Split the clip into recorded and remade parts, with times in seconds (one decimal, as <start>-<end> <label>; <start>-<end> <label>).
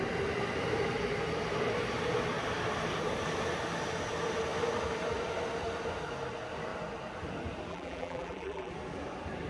0.0-7.7 recorded; 7.7-8.7 remade; 8.7-9.5 recorded